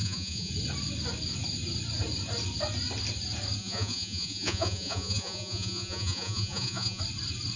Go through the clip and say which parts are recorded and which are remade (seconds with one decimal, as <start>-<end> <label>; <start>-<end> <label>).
0.0-0.5 remade; 0.5-3.6 recorded; 3.6-7.0 remade; 7.0-7.6 recorded